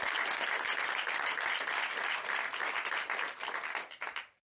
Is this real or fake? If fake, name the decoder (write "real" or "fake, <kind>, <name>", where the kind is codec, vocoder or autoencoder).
real